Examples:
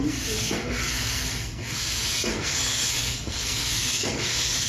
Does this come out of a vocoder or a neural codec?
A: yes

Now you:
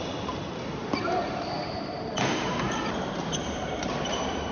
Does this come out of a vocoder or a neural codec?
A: yes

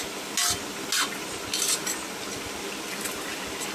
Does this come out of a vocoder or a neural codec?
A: no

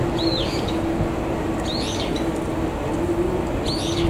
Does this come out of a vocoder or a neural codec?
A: no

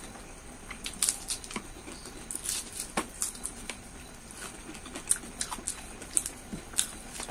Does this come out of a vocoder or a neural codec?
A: no